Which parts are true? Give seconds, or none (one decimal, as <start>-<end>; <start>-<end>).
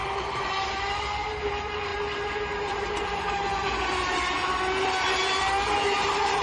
0.0-6.4